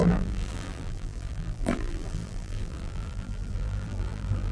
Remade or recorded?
remade